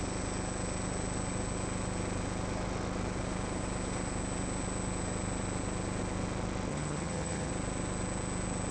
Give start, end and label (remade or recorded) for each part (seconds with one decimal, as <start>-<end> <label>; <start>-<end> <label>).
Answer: 0.0-6.7 recorded; 6.7-7.5 remade; 7.5-8.7 recorded